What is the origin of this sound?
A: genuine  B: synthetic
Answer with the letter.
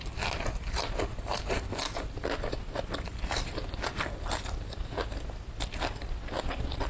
A